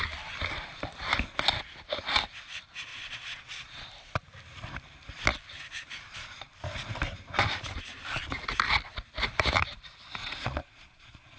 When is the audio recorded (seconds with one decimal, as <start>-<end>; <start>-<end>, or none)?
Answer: 0.0-2.9; 3.9-10.2